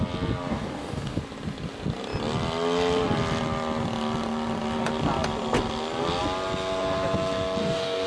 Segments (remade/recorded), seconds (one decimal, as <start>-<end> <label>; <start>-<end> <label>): 0.0-0.5 recorded; 0.5-1.2 remade; 1.2-7.6 recorded; 7.6-8.1 remade